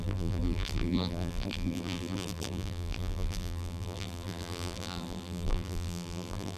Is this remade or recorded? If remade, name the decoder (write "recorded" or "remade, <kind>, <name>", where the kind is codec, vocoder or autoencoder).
remade, vocoder, BigVGAN v2